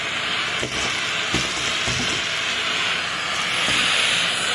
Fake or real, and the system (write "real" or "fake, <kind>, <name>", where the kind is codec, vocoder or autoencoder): real